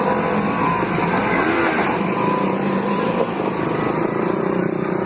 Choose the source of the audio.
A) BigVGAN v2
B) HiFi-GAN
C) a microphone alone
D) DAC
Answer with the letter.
C